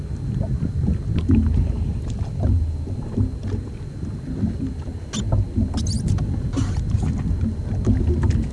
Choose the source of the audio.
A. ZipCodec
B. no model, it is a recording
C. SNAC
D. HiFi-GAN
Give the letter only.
B